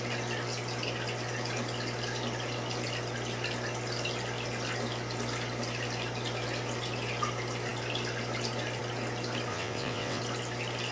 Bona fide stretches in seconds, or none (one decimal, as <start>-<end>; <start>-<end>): 0.0-9.5; 10.2-10.9